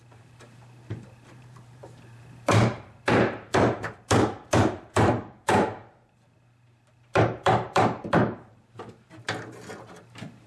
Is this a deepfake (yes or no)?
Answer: yes